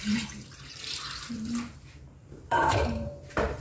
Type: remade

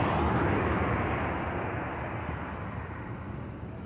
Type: recorded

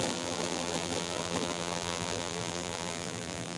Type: remade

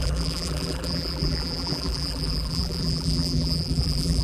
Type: remade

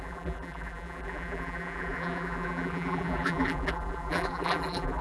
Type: remade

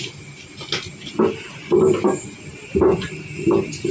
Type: recorded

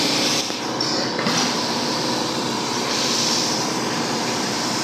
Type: remade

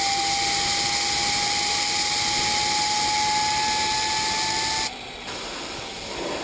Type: recorded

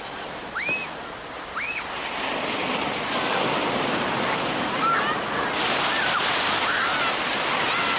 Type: recorded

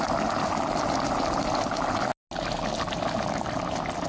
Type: recorded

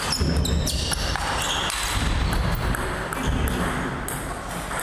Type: recorded